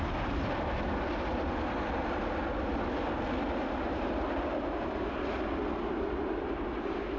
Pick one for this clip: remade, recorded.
recorded